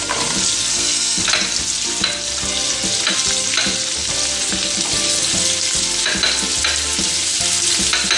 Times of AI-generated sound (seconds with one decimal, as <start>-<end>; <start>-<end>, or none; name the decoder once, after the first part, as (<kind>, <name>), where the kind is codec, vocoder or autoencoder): 0.7-1.2 (codec, SNAC)